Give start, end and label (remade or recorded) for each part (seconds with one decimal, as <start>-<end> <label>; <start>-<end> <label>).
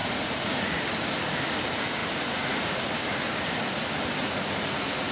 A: 0.0-0.9 remade; 0.9-2.0 recorded; 2.0-2.8 remade; 2.8-4.2 recorded; 4.2-5.1 remade